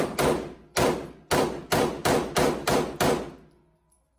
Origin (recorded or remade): recorded